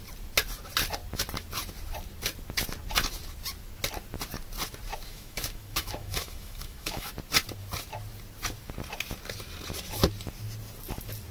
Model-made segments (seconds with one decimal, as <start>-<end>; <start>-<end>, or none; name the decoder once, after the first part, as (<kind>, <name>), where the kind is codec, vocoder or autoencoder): 5.1-7.1 (autoencoder, DAC-VAE)